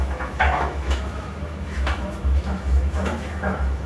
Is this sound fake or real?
fake